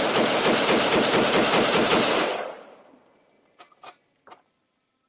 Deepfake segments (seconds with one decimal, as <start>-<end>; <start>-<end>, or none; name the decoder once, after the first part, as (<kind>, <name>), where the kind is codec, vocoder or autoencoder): none